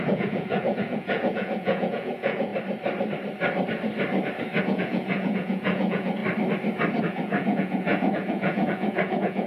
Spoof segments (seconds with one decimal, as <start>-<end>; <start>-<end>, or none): 0.0-2.5; 4.6-6.2; 7.0-9.5

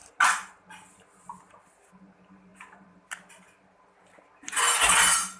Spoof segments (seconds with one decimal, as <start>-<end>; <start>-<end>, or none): none

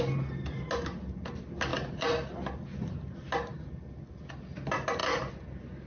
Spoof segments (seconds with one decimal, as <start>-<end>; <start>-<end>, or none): none

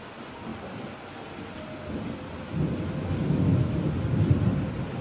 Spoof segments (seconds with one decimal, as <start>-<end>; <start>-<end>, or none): none

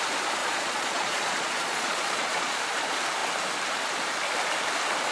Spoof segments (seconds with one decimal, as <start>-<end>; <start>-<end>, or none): 0.4-2.6

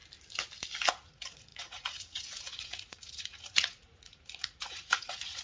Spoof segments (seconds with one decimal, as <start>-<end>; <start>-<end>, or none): 0.9-5.4

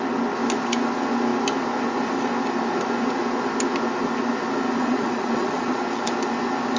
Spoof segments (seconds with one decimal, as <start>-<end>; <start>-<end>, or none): 4.8-5.8